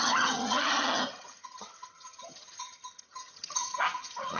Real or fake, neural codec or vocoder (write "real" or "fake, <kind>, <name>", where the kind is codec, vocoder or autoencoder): fake, vocoder, HiFi-GAN